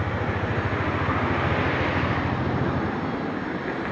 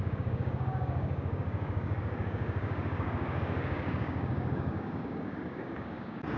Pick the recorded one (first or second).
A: first